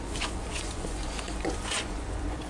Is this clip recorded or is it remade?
remade